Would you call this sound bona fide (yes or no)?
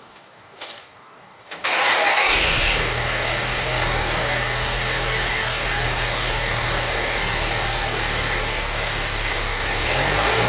no